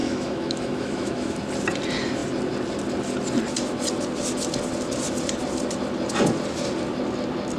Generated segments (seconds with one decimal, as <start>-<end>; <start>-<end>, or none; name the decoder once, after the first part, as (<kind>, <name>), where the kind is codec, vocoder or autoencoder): 0.0-1.4 (autoencoder, DAC-VAE)